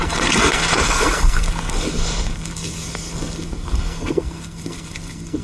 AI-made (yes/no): yes